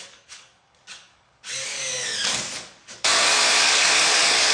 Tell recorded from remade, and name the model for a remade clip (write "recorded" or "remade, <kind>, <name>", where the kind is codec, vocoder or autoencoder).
remade, codec, DAC